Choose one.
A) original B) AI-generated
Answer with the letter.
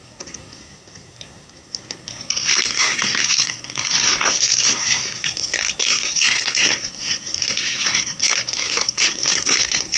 B